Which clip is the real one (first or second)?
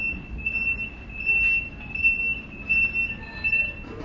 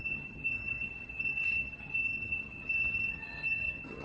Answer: first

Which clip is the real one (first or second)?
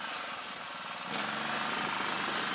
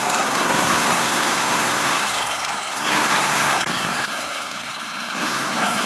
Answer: first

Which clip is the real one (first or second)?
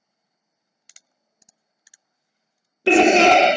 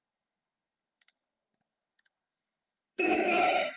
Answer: first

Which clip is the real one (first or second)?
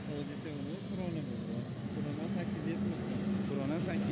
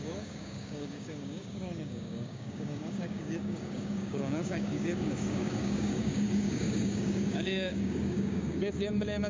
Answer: first